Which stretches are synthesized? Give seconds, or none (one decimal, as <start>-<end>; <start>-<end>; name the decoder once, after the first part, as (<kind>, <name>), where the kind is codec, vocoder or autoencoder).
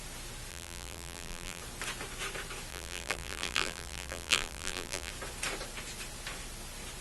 0.5-1.6 (vocoder, BigVGAN v2); 2.7-5.1